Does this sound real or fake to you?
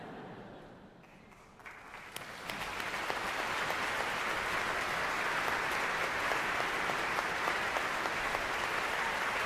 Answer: real